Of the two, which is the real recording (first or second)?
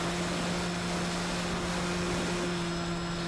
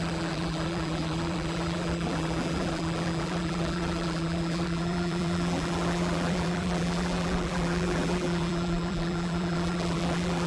first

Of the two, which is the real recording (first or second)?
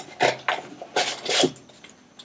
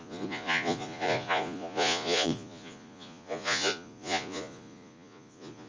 first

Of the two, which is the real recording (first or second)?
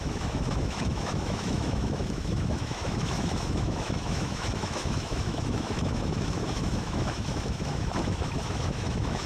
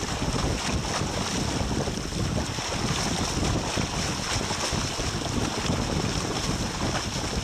second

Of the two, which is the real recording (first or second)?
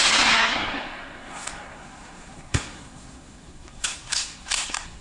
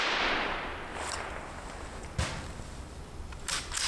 second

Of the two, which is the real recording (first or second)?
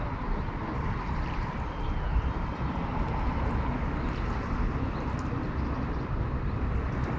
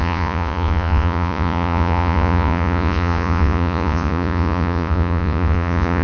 first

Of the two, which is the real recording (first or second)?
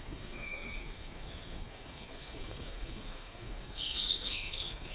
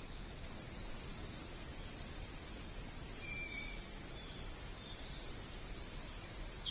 second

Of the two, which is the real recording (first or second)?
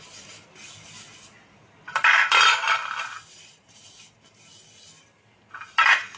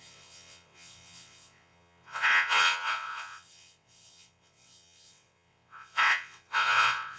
first